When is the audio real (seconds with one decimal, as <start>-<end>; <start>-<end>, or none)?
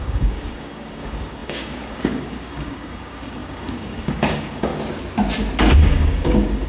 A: 4.7-5.8